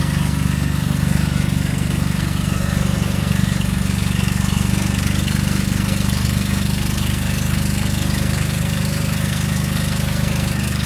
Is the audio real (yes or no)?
no